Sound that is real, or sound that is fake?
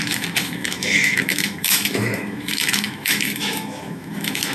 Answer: fake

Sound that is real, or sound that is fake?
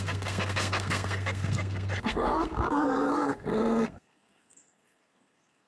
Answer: fake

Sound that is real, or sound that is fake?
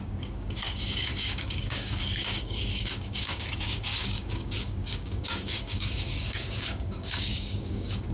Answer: fake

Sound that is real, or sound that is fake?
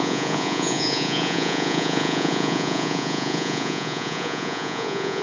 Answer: fake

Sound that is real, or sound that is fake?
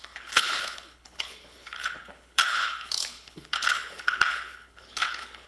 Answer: fake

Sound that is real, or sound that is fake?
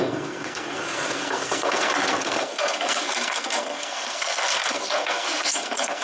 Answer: fake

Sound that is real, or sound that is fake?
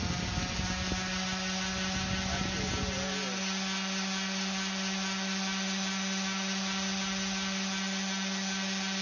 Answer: real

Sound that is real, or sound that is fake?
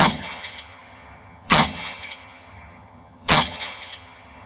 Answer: fake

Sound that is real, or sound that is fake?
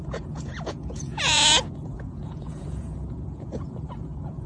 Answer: fake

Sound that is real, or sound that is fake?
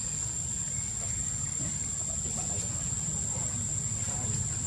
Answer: real